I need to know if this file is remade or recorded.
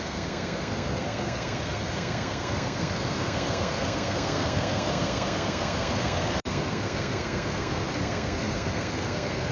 remade